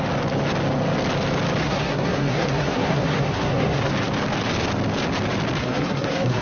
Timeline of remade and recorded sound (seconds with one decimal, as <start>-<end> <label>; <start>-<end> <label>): 0.0-1.6 recorded; 1.6-3.9 remade; 3.9-5.6 recorded; 5.6-6.4 remade